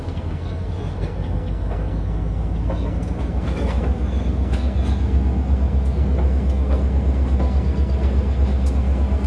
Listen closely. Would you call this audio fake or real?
fake